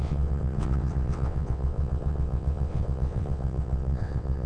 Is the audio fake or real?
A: fake